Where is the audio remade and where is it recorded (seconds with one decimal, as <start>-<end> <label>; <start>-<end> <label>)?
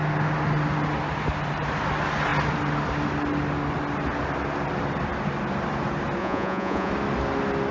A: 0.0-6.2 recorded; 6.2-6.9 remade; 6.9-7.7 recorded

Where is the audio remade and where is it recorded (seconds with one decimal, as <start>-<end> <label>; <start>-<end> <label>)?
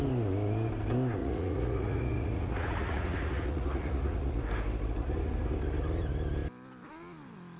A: 0.0-1.2 recorded; 1.2-4.3 remade; 4.3-7.6 recorded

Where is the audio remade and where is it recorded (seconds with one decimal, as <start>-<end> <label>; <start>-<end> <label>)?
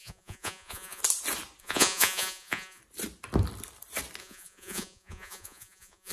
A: 0.0-1.0 remade; 1.0-1.6 recorded; 1.6-2.8 remade; 2.8-4.2 recorded; 4.2-6.1 remade